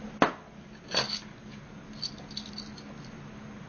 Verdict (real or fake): real